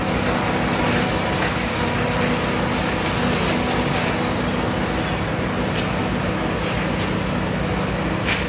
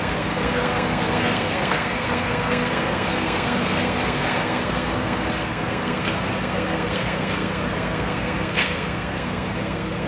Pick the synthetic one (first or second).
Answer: second